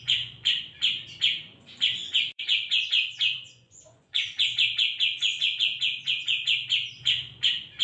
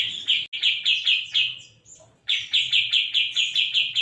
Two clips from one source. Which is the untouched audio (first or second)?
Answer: second